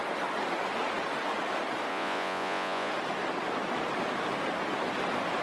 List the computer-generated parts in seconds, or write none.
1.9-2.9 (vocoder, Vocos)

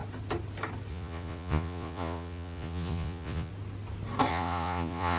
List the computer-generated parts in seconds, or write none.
0.9-3.5 (vocoder, Vocos); 4.3-5.2

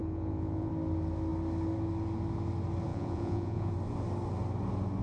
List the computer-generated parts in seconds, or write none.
0.0-0.7 (vocoder, Vocos); 2.9-3.7

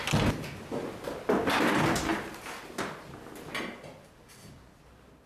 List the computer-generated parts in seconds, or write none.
none

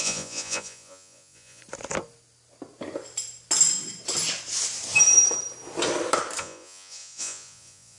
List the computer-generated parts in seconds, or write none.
0.0-1.6 (vocoder, Vocos); 6.4-8.0

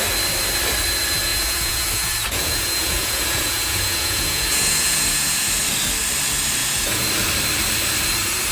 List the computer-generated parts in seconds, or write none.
1.3-5.6 (vocoder, Vocos); 6.6-7.1

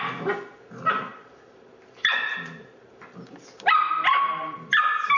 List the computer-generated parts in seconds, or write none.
none

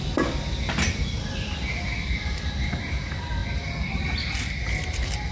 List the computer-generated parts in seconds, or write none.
none